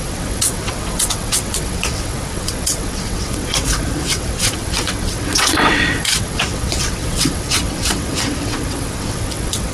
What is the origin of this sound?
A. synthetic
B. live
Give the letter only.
A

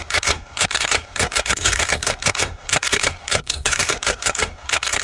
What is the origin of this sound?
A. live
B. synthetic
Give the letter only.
B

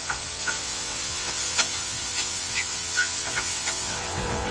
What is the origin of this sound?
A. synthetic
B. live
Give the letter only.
A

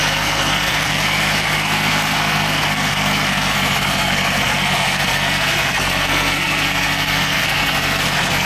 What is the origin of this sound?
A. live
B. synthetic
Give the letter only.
B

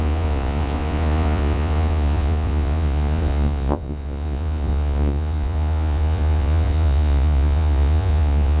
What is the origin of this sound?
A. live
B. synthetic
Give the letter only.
B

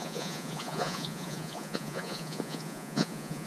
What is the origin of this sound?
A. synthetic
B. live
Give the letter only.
A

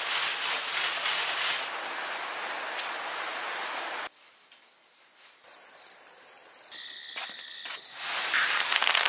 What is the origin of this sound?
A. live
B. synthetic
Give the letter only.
A